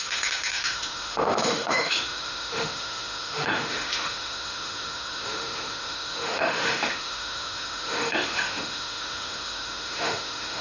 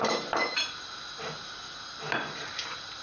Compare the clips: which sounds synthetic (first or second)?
first